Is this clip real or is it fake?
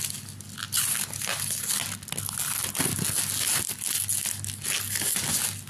real